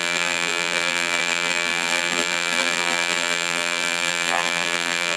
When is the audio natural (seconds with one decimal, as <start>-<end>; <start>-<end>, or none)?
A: none